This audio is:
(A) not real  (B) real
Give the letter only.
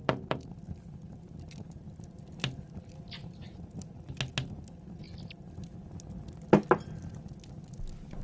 B